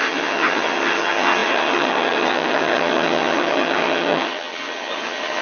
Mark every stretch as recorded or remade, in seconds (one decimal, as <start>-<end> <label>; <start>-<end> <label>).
0.0-5.4 remade